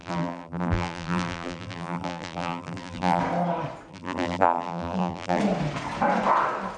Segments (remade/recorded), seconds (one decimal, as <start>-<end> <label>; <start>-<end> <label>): 0.0-3.2 remade; 3.2-3.9 recorded; 3.9-5.4 remade; 5.4-6.8 recorded